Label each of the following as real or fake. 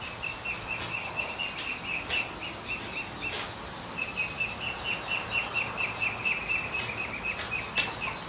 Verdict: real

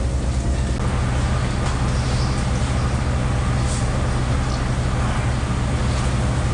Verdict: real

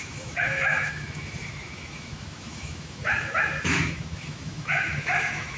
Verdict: fake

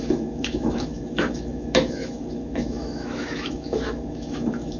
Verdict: fake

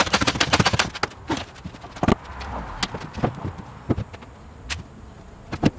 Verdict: real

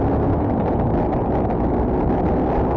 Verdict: real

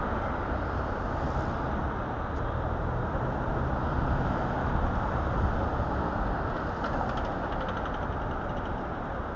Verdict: real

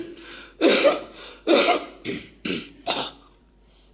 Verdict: fake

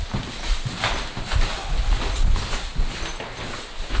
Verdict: real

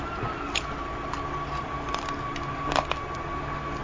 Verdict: real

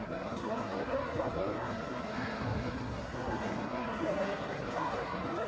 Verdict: fake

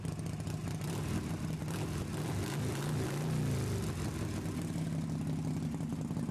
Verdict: real